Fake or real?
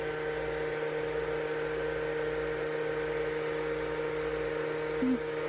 real